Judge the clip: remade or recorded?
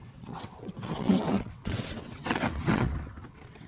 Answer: remade